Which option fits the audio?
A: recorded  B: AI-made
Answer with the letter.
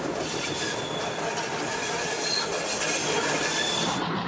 A